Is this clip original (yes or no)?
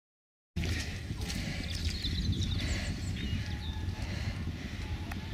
yes